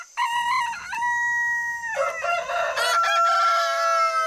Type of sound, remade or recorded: recorded